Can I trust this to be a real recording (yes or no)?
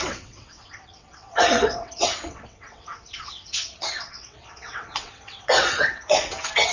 no